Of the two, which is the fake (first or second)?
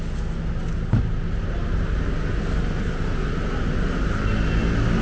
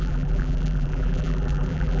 second